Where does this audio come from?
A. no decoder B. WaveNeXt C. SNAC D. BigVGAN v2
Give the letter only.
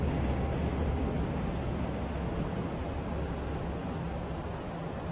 A